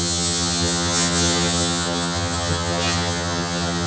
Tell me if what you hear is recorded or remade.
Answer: remade